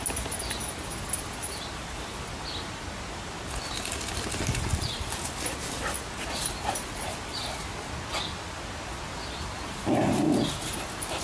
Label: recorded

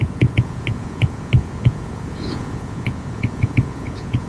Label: remade